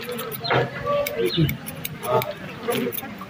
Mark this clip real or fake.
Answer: real